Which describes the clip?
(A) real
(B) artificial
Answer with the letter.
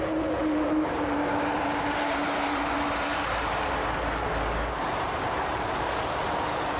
B